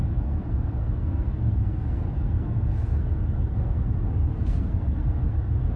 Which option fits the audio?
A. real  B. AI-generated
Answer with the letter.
B